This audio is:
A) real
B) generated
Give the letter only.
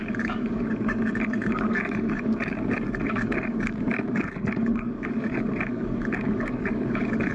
B